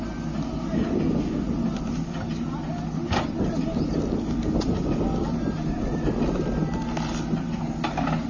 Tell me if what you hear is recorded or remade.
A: recorded